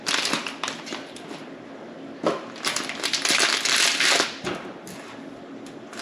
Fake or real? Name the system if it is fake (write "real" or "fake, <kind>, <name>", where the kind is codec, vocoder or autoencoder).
real